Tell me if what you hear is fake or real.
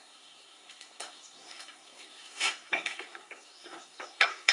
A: fake